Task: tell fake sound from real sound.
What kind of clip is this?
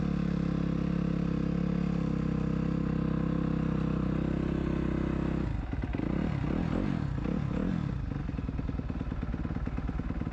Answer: real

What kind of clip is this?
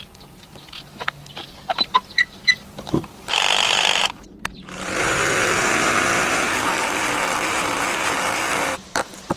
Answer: fake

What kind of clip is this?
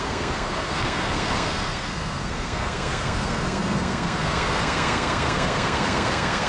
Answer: fake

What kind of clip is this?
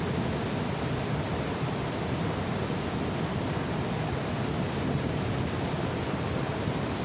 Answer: real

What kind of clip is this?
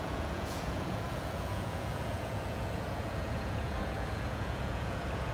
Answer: fake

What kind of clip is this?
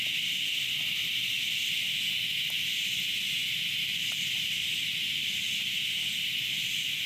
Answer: real